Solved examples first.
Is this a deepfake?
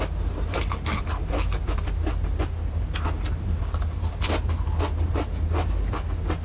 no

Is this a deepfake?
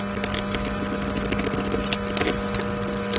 no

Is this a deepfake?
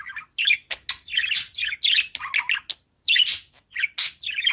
no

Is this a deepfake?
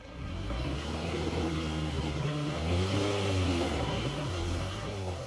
yes